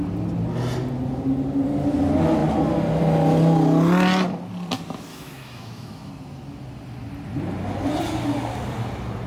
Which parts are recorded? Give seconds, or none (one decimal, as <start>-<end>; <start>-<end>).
0.0-5.1; 6.1-9.3